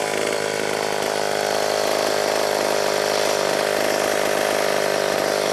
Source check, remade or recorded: recorded